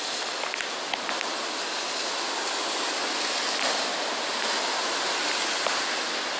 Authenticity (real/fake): real